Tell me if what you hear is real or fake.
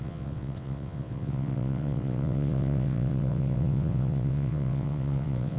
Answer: fake